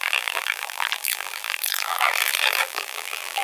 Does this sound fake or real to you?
fake